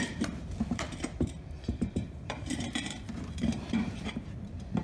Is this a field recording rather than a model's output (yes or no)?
no